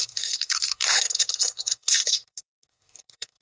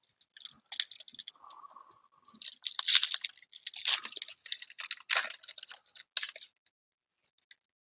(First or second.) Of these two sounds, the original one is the second